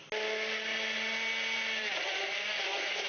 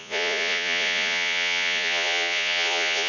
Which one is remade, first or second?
second